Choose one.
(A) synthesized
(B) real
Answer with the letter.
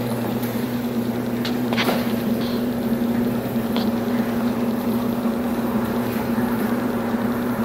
A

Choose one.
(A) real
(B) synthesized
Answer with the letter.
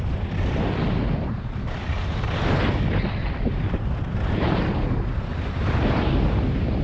B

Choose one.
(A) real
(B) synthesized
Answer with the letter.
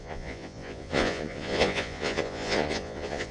B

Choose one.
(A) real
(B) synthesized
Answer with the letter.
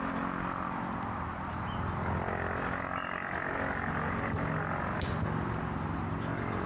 A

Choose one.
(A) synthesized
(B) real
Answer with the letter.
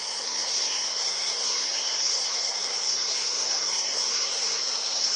A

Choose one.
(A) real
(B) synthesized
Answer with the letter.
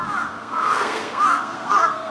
B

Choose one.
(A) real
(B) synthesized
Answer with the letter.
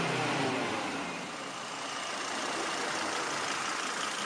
A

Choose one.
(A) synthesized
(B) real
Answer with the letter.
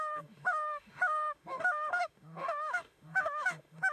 A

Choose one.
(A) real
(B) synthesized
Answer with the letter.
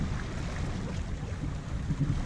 A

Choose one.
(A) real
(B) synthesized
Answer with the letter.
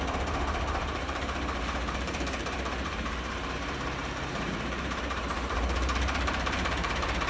B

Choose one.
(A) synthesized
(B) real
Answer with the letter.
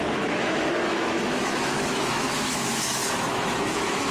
A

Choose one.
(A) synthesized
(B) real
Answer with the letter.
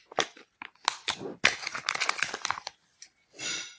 B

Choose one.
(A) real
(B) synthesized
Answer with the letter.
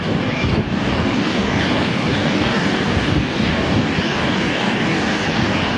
B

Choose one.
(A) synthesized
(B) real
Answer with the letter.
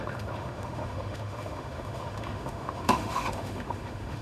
A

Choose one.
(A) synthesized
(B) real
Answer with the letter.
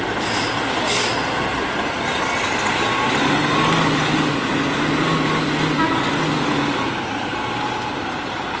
B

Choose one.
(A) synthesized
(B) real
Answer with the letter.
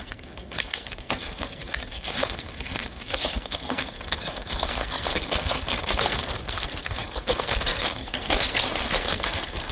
A